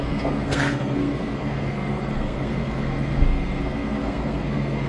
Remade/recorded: remade